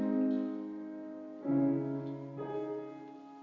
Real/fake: real